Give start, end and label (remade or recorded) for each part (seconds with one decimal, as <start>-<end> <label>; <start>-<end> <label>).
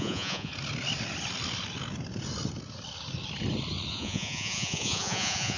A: 0.0-0.5 remade; 0.5-3.9 recorded; 3.9-5.6 remade